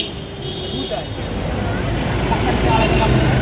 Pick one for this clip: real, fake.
real